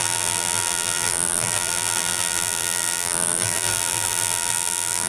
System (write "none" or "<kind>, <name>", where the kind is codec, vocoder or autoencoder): vocoder, BigVGAN v2